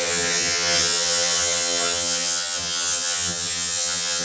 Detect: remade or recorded remade